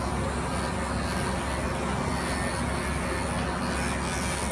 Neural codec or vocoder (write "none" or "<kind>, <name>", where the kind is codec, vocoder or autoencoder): none